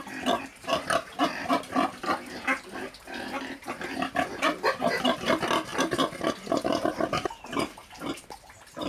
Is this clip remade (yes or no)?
yes